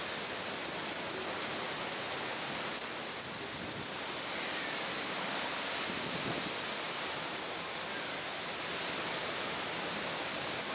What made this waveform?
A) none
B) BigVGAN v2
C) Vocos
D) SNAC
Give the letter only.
A